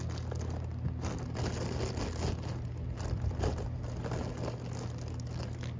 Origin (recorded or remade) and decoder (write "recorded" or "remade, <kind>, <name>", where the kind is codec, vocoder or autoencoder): recorded